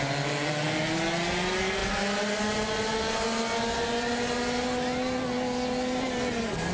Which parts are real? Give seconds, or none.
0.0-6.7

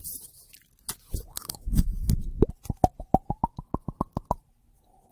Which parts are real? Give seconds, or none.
0.0-1.3; 1.9-5.1

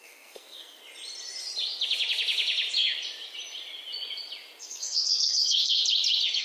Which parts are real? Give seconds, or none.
0.8-4.6; 5.8-6.4

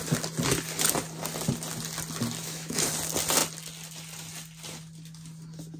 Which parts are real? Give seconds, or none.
0.0-2.4; 2.9-5.8

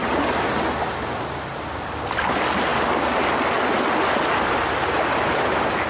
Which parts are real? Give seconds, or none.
0.0-5.9